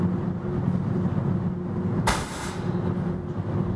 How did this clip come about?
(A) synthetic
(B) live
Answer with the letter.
B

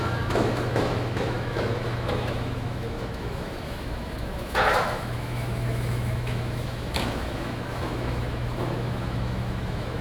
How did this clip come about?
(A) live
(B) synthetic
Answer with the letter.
B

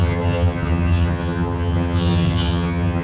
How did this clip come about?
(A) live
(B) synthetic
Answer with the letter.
B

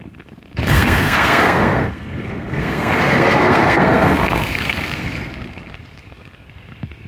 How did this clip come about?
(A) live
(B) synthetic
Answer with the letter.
B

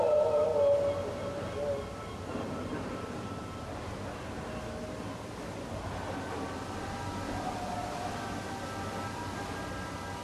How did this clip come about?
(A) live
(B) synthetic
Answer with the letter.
A